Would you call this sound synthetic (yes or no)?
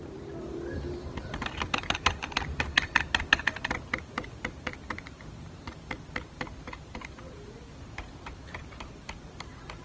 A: yes